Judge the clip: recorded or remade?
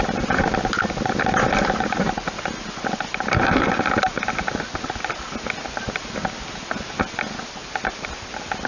recorded